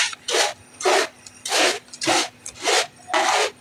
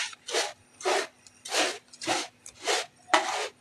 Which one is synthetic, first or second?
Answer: second